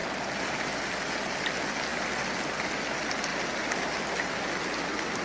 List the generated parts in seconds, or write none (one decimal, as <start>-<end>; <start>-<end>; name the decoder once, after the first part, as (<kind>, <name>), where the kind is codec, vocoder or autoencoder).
none